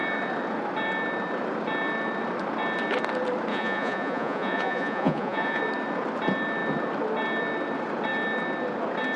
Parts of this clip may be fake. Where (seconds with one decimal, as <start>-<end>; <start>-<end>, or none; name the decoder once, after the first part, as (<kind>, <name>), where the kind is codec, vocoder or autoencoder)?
3.5-5.6 (vocoder, Vocos)